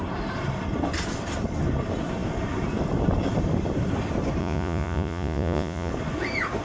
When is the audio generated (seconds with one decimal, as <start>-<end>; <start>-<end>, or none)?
4.4-5.9